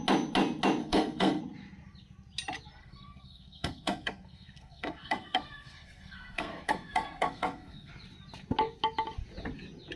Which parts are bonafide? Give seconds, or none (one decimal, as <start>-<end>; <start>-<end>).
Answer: 0.0-0.8; 1.4-2.8; 7.9-10.0